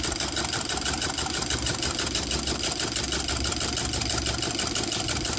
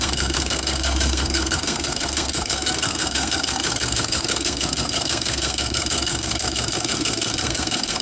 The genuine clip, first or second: first